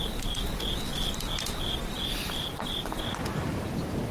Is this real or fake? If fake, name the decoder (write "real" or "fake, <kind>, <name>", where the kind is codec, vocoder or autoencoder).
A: fake, vocoder, BigVGAN v2